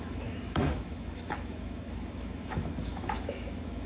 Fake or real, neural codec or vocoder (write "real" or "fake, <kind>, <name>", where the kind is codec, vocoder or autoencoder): fake, autoencoder, DAC-VAE